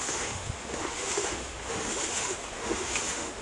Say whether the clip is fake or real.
fake